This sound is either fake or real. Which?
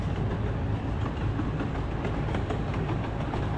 real